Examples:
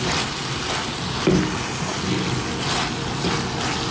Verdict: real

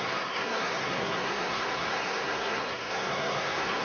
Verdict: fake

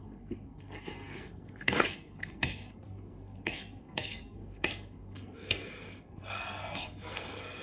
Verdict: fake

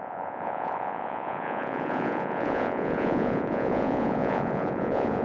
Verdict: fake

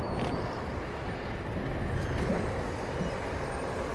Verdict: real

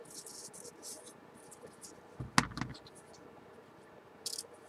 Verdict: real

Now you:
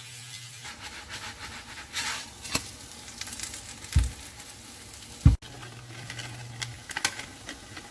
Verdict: real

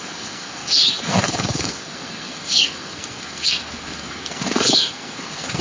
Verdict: fake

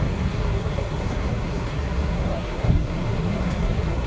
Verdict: fake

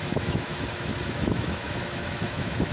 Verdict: fake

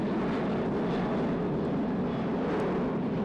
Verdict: real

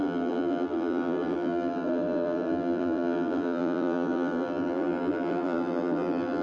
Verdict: fake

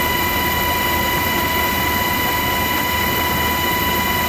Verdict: real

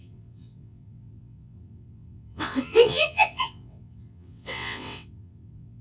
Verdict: fake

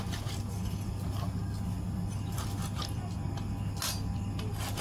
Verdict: real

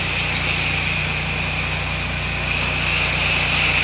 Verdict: real